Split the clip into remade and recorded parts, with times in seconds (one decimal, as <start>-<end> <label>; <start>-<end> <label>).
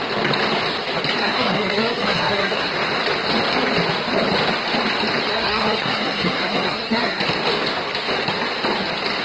0.0-1.2 recorded; 1.2-2.7 remade; 2.7-5.3 recorded; 5.3-7.2 remade; 7.2-9.2 recorded